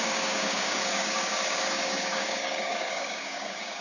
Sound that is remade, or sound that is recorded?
remade